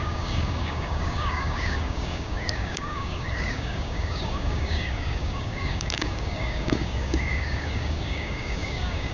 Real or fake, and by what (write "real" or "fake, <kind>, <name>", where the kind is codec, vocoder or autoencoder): fake, codec, DAC